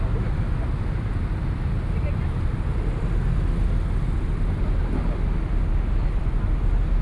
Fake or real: real